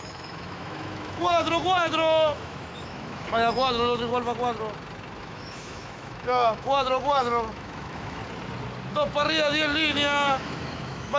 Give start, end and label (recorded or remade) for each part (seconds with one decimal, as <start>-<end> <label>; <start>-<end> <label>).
0.0-4.1 remade; 4.1-5.2 recorded; 5.2-8.2 remade; 8.2-8.9 recorded; 8.9-11.2 remade